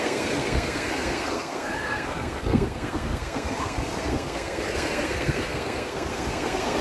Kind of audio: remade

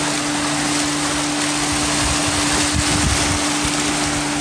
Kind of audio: recorded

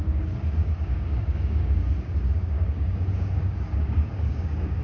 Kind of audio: remade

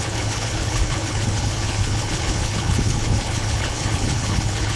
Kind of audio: remade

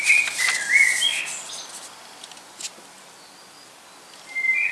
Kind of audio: recorded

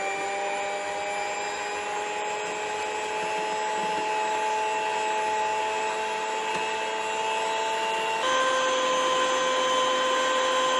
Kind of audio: recorded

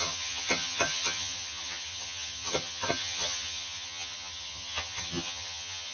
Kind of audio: remade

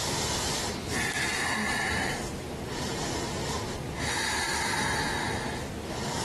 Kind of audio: recorded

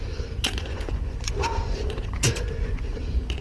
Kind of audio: remade